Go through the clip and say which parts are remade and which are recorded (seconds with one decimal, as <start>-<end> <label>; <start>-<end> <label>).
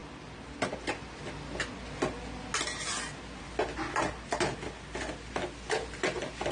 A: 0.0-6.5 recorded